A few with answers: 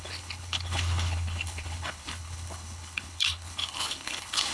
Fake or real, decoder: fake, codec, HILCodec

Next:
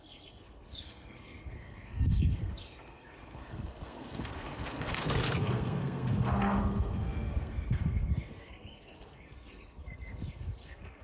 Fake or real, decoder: fake, codec, SNAC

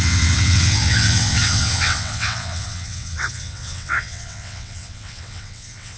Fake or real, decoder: fake, vocoder, WaveNeXt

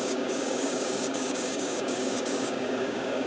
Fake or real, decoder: fake, codec, DAC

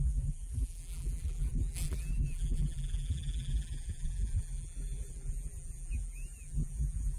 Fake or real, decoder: fake, vocoder, BigVGAN v2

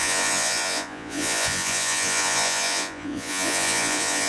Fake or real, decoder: fake, vocoder, Vocos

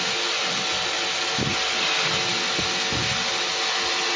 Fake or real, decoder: real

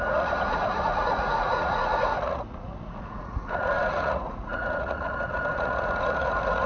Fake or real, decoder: fake, vocoder, Vocos